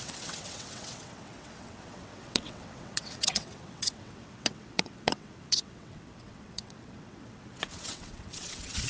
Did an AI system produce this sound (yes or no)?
yes